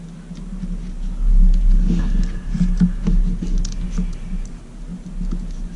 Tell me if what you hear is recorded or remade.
recorded